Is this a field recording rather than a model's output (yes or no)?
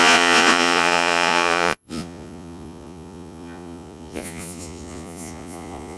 no